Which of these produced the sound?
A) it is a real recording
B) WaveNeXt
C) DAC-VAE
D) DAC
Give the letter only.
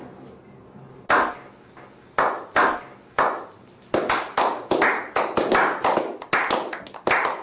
A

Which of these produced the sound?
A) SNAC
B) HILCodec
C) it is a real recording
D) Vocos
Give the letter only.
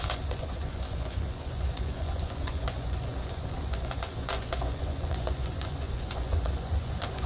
D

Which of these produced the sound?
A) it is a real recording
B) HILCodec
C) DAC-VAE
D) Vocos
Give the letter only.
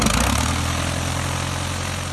A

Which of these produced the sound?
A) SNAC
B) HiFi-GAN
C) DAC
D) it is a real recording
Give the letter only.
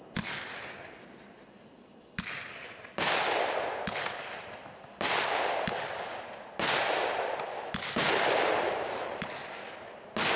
D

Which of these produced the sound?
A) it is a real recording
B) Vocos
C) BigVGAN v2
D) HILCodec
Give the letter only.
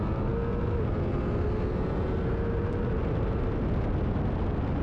A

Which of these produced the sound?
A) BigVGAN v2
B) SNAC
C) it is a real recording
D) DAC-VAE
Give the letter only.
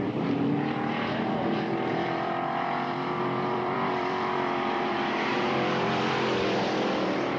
A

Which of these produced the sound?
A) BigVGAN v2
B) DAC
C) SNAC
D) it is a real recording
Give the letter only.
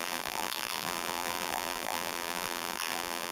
A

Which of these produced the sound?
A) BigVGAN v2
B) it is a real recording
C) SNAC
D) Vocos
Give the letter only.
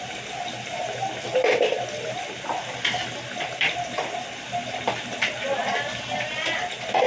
B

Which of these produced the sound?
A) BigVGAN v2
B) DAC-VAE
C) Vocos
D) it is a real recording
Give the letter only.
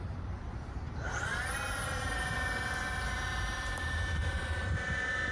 A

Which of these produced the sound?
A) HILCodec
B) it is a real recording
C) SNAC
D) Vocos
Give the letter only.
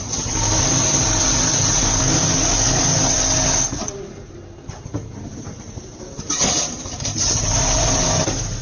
B